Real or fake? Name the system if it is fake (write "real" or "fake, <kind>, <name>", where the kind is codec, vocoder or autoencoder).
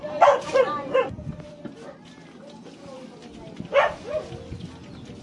real